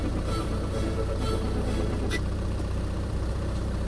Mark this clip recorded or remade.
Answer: remade